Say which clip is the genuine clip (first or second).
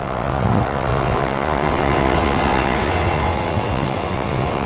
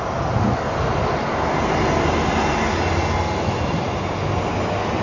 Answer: second